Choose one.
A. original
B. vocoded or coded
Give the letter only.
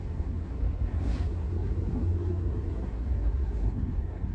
B